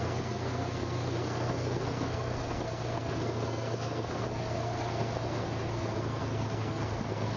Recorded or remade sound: remade